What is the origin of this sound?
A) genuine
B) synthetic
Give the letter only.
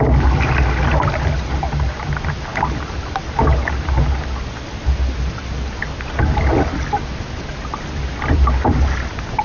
A